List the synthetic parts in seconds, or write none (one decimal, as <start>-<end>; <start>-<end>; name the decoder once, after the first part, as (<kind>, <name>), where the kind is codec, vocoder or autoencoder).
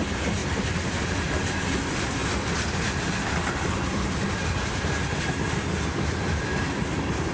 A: none